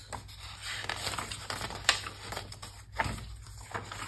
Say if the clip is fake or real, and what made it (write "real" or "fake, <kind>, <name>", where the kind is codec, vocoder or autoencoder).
real